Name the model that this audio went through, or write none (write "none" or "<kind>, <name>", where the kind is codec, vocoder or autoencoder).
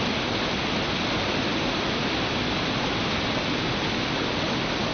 none